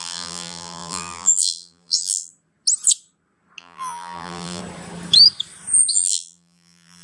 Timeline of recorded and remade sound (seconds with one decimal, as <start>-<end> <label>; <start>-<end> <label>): 0.0-2.3 remade; 2.3-3.6 recorded; 3.6-4.6 remade; 4.6-5.9 recorded; 5.9-7.0 remade